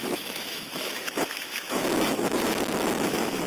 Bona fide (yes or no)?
no